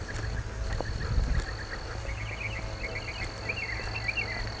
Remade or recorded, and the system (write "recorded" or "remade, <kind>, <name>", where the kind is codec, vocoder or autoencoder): recorded